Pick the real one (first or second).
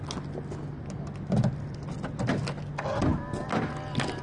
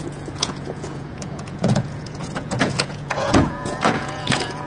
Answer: first